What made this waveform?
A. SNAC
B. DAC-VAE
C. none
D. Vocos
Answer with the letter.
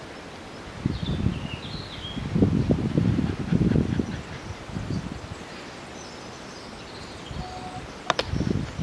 C